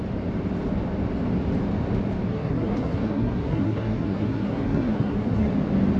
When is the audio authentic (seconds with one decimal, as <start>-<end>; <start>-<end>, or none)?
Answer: 0.0-2.3; 5.5-6.0